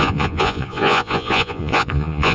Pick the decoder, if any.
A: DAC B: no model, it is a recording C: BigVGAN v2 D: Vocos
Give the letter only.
D